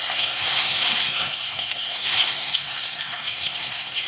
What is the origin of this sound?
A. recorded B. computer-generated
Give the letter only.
B